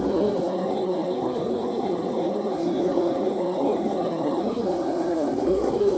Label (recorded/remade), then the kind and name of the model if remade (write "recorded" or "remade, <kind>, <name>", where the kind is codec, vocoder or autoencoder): remade, codec, SNAC